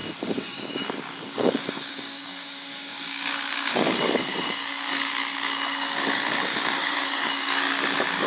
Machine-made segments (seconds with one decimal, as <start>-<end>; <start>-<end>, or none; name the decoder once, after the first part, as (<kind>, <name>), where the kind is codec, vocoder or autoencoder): 0.0-8.3 (codec, DAC)